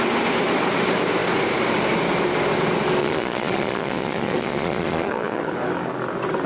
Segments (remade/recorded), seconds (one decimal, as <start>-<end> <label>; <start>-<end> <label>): 0.0-3.0 recorded; 3.0-5.5 remade; 5.5-6.5 recorded